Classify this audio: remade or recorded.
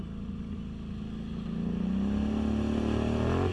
recorded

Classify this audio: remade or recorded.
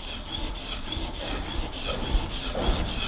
recorded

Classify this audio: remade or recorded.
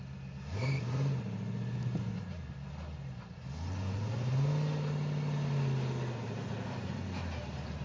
recorded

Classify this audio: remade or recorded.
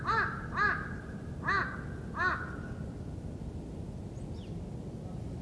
recorded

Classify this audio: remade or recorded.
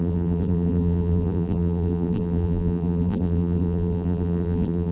remade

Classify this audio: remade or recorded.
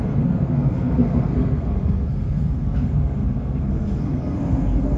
remade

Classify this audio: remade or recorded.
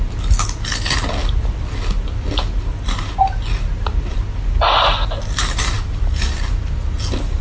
recorded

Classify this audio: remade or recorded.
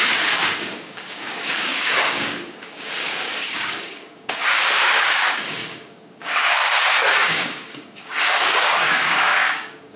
remade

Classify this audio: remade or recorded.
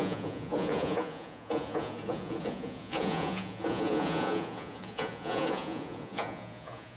remade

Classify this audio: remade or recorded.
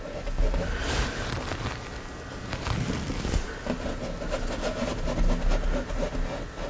recorded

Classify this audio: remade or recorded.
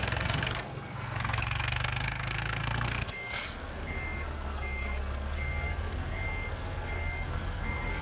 remade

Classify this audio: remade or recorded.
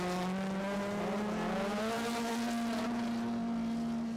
recorded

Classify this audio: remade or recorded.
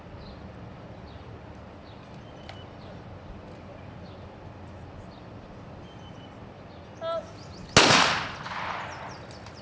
recorded